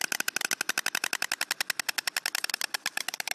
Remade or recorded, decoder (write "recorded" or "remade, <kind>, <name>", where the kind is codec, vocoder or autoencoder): recorded